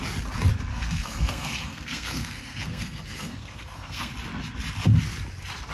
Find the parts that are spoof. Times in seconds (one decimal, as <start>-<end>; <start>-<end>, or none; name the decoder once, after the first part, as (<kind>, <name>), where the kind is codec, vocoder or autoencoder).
0.7-4.1 (codec, SNAC)